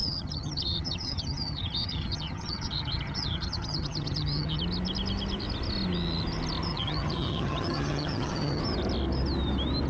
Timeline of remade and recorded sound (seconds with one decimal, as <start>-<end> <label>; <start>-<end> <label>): 0.0-4.6 remade; 4.6-6.7 recorded; 6.7-8.6 remade; 8.6-9.9 recorded